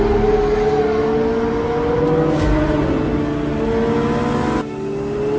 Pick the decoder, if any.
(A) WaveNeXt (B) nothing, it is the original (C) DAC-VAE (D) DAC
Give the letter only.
B